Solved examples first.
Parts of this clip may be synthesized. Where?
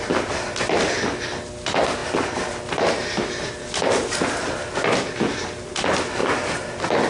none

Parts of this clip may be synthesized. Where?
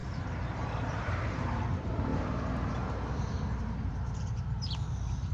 0.0-5.3 (vocoder, BigVGAN v2)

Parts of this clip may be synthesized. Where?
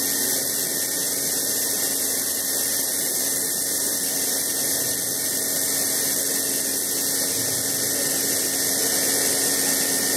1.0-4.7 (vocoder, BigVGAN v2)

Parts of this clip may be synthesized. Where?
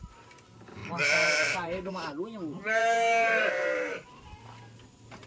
0.8-1.9 (vocoder, BigVGAN v2); 2.8-3.5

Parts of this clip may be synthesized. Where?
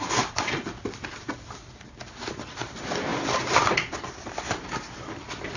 0.0-5.6 (vocoder, BigVGAN v2)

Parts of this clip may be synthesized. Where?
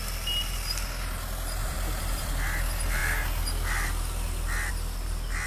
1.6-2.3 (vocoder, BigVGAN v2)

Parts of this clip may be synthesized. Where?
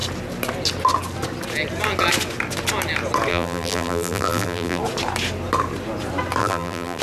3.3-4.8 (vocoder, BigVGAN v2); 6.4-7.0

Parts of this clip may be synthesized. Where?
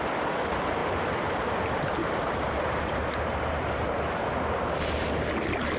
2.0-4.6 (vocoder, BigVGAN v2)